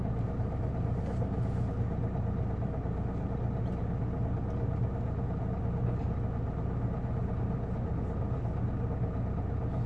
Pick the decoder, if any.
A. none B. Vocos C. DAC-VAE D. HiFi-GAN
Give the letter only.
A